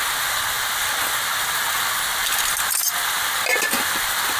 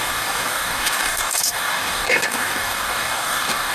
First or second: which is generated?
second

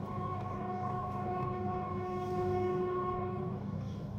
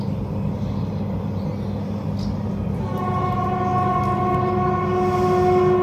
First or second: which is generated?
first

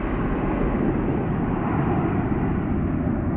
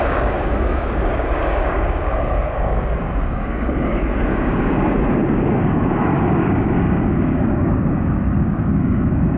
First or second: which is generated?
second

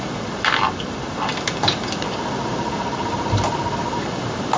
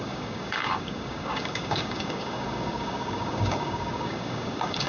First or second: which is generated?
second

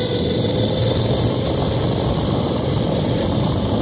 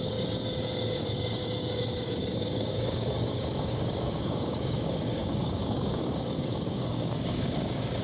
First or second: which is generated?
second